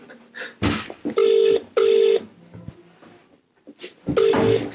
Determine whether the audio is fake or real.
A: real